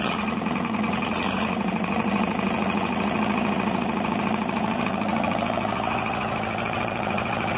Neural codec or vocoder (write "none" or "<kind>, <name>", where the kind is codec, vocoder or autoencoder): vocoder, Vocos